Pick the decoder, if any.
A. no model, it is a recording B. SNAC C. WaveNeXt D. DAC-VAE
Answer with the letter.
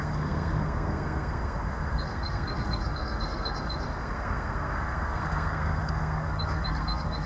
B